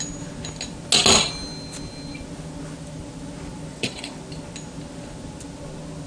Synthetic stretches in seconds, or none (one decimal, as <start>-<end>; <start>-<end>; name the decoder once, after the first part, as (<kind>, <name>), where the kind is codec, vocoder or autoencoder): 3.7-4.2 (vocoder, WaveNeXt)